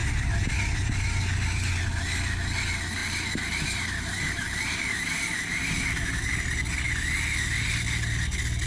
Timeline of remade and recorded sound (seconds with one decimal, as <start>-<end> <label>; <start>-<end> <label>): 0.0-3.0 recorded; 3.0-6.5 remade; 6.5-8.7 recorded